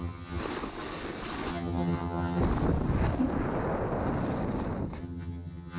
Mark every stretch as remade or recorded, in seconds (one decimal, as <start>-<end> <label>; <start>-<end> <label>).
0.0-0.4 remade; 0.4-1.5 recorded; 1.5-2.4 remade; 2.4-5.0 recorded; 5.0-5.8 remade